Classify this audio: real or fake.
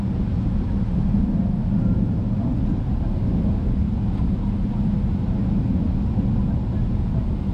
real